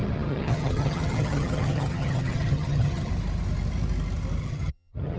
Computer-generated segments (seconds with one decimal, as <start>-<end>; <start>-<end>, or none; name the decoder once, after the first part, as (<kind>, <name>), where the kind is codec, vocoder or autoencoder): 0.0-3.1 (vocoder, HiFi-GAN); 4.4-5.2

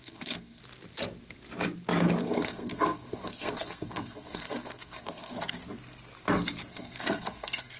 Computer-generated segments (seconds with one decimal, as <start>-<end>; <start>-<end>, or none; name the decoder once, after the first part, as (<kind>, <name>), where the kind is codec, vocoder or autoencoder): 0.0-0.6 (codec, SNAC); 2.2-5.6; 6.7-7.8

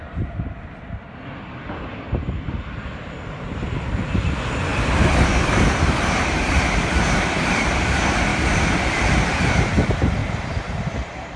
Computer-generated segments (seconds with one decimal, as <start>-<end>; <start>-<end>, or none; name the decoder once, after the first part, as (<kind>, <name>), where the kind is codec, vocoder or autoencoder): 4.7-6.6 (vocoder, BigVGAN v2); 8.3-9.5; 10.2-11.4

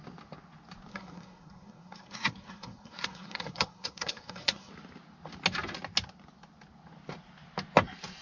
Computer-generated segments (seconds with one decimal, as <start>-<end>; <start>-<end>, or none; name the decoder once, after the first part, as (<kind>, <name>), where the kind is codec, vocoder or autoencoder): 0.9-4.7 (codec, SNAC)

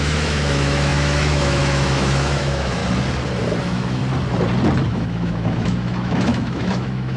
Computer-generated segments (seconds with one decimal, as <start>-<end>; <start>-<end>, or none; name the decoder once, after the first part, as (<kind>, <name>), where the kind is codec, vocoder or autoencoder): 0.0-2.8 (autoencoder, DAC-VAE); 3.6-4.0; 4.9-7.2